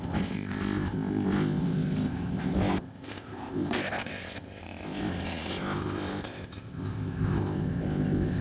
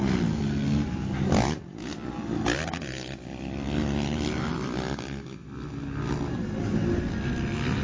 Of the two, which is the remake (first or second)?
first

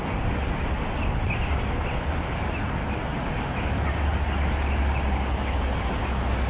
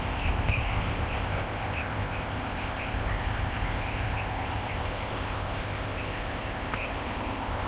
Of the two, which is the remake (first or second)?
second